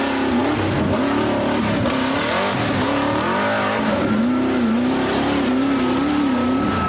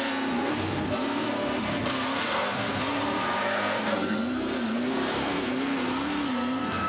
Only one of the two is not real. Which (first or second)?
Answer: second